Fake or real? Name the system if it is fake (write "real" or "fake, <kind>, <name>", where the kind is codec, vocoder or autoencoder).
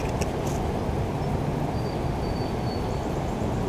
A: real